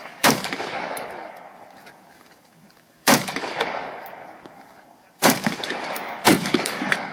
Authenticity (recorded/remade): remade